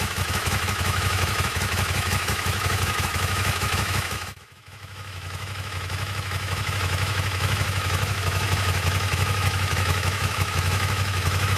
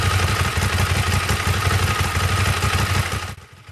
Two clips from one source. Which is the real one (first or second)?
second